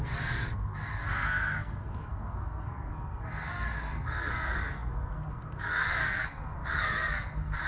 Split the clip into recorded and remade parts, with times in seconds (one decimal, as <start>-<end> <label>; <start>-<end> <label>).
0.0-7.7 remade